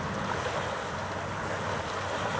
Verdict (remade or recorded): recorded